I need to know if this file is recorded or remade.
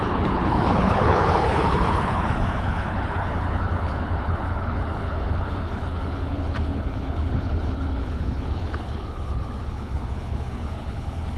remade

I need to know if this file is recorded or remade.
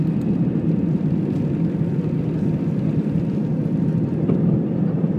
recorded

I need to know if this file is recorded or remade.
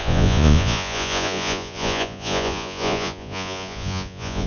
remade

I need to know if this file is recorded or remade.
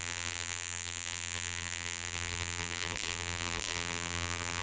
remade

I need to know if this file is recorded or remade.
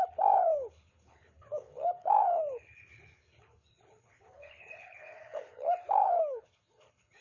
remade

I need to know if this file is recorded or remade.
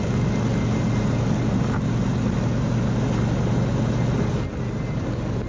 recorded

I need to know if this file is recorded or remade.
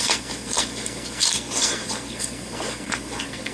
remade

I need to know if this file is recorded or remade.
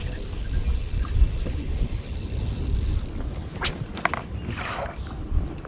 recorded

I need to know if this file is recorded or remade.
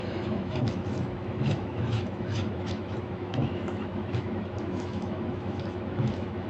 remade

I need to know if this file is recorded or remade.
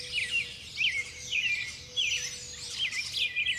recorded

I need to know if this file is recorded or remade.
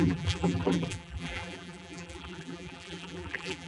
remade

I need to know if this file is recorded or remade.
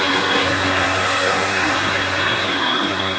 remade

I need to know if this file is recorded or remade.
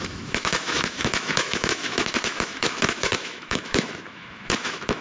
remade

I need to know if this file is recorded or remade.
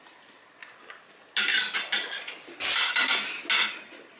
recorded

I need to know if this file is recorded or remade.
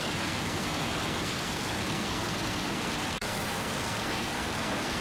remade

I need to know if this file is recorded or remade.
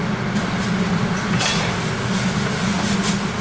recorded